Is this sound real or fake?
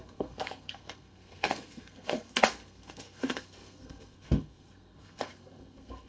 fake